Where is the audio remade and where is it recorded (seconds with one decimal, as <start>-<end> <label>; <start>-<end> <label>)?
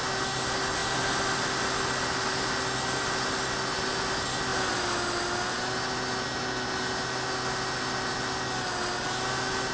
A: 0.0-9.7 recorded